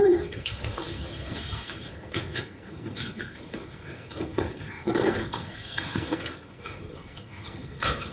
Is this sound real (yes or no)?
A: no